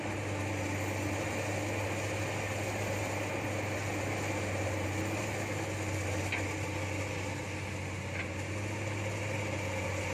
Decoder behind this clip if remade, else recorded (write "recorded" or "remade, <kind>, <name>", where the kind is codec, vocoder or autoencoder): recorded